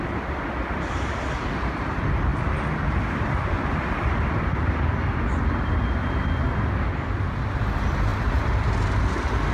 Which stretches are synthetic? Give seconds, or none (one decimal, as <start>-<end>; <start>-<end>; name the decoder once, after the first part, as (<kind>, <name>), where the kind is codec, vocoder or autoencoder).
none